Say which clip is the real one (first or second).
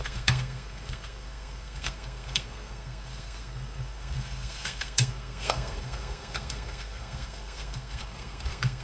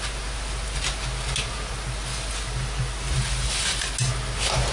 second